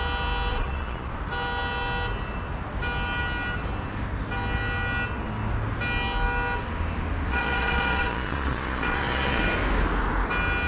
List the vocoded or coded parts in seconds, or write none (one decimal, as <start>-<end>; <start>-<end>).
0.5-1.1; 7.3-9.4